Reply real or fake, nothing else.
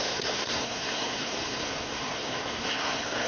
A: fake